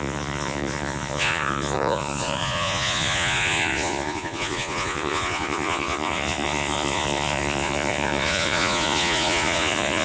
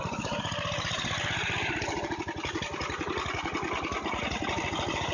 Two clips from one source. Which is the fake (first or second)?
first